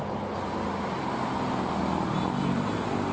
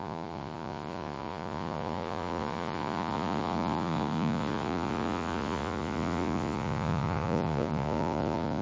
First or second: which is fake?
second